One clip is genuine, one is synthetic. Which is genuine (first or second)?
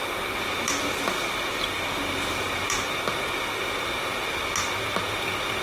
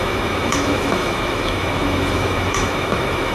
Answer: first